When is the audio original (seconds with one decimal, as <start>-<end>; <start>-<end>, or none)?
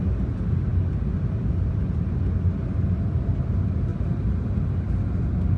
0.7-1.4; 3.9-4.8